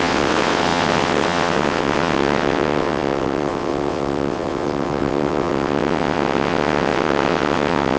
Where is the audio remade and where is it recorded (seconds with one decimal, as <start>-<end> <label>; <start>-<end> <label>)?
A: 0.0-8.0 remade